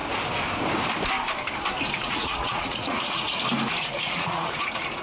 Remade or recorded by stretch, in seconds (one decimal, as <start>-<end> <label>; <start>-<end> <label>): 0.0-2.0 recorded; 2.0-3.3 remade; 3.3-3.8 recorded; 3.8-5.0 remade